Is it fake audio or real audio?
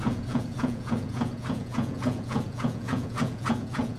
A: fake